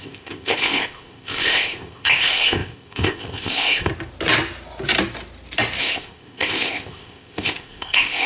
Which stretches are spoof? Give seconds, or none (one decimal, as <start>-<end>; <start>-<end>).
0.0-3.9; 5.8-8.3